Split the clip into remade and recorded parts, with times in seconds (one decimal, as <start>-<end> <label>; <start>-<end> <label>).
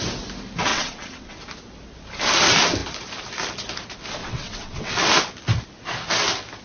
0.0-0.7 recorded; 0.7-1.4 remade; 1.4-4.2 recorded; 4.2-4.9 remade; 4.9-6.6 recorded